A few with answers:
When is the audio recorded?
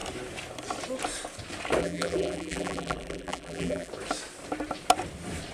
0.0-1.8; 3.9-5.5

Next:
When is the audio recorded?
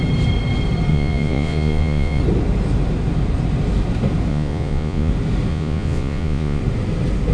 0.0-0.9; 2.2-4.3; 5.1-5.5; 6.6-7.3